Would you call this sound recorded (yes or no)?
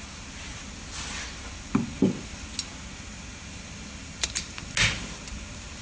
yes